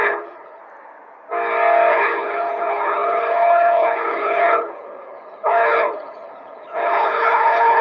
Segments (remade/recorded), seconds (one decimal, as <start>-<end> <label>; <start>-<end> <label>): 0.0-0.6 remade; 0.6-1.9 recorded; 1.9-7.8 remade